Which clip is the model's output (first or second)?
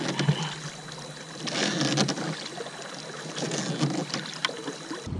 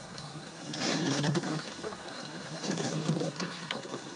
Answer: second